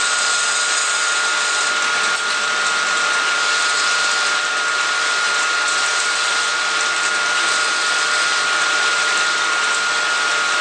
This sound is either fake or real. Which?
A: fake